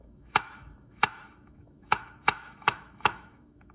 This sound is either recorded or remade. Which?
remade